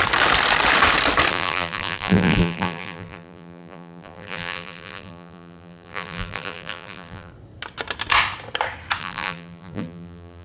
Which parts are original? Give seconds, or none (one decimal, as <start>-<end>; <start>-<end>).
0.0-1.3; 7.3-9.0